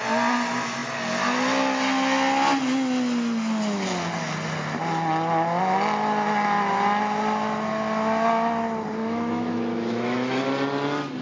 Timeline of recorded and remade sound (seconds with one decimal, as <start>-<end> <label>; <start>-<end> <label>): 0.0-9.0 recorded; 9.0-10.4 remade; 10.4-11.2 recorded